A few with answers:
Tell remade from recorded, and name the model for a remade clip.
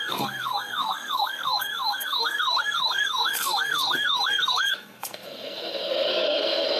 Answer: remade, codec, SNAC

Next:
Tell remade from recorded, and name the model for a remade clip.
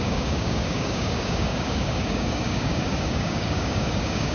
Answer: remade, codec, DAC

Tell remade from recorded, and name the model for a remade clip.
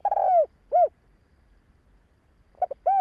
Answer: recorded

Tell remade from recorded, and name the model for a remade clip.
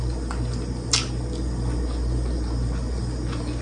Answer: recorded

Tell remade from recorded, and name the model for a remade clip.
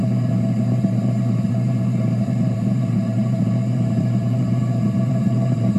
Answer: remade, vocoder, BigVGAN v2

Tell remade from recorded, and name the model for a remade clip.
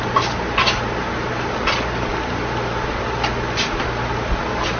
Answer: recorded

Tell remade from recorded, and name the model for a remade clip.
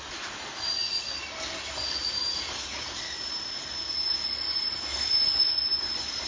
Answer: recorded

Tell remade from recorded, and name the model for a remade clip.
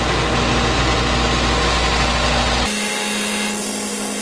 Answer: recorded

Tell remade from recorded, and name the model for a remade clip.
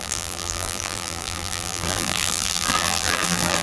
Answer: remade, vocoder, BigVGAN v2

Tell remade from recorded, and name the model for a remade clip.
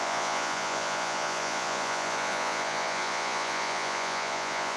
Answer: remade, vocoder, Vocos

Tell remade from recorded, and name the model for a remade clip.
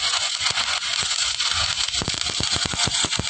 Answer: remade, vocoder, Vocos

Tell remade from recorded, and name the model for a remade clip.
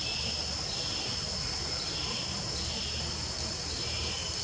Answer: recorded